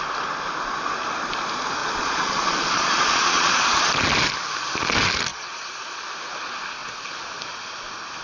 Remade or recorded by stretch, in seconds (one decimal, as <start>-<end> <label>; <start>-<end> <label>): 0.0-1.8 recorded; 1.8-3.9 remade; 3.9-5.3 recorded; 5.3-6.0 remade; 6.0-8.2 recorded